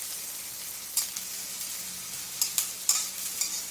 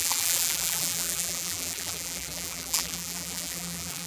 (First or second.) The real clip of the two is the first